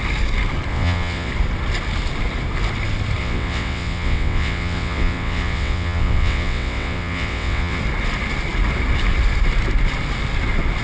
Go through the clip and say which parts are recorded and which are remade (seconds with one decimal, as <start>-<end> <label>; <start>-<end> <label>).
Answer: 0.0-0.7 recorded; 0.7-1.3 remade; 1.3-3.2 recorded; 3.2-7.8 remade; 7.8-10.8 recorded